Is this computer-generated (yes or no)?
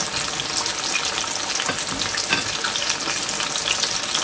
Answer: no